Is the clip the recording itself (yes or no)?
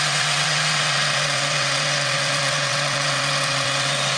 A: no